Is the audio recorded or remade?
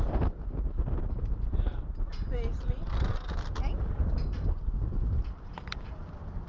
recorded